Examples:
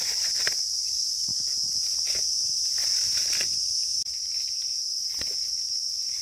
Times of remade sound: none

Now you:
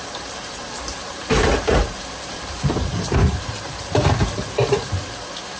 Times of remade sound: 0.0-0.5 (vocoder, BigVGAN v2); 1.0-4.4

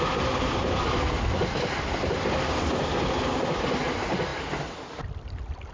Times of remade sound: none

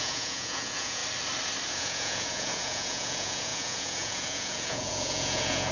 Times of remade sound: 0.0-1.0 (vocoder, Vocos); 1.7-5.7

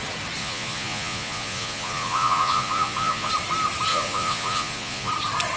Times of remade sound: 0.4-3.3 (vocoder, Vocos); 3.9-5.1

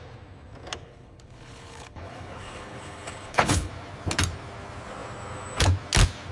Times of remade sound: 0.8-3.7 (codec, HILCodec)

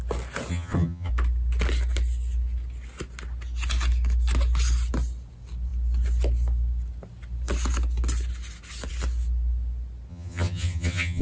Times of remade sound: 0.5-1.1 (vocoder, HiFi-GAN); 10.1-11.2

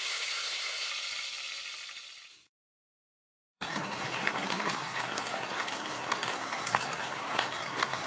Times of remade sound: 0.0-0.9 (codec, SNAC); 2.3-8.1